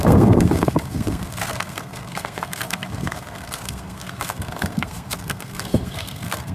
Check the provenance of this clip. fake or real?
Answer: fake